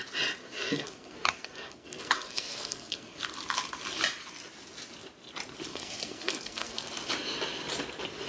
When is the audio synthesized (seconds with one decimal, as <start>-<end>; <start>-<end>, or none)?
0.4-3.2; 5.7-6.9